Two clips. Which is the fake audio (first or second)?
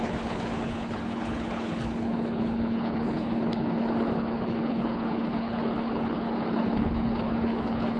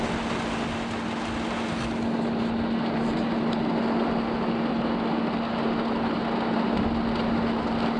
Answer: first